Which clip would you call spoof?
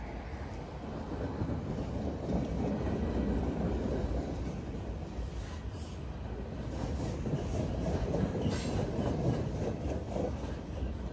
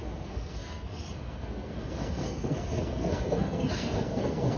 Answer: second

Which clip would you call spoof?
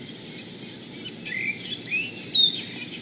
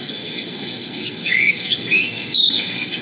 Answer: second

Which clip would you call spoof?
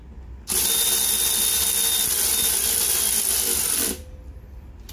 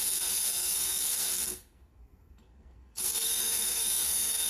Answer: second